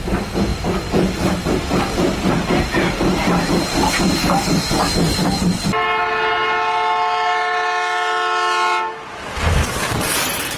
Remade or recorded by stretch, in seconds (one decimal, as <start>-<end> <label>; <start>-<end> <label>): 0.0-0.5 recorded; 0.5-1.7 remade; 1.7-10.6 recorded